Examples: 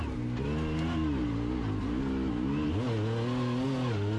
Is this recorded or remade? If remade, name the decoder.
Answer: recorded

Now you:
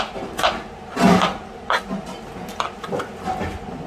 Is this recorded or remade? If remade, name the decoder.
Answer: recorded